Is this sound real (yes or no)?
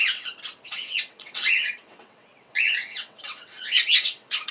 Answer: no